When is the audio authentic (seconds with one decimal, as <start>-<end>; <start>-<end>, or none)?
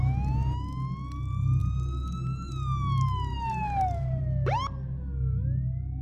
0.0-3.3; 4.2-6.0